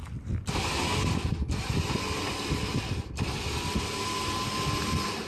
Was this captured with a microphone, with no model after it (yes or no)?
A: yes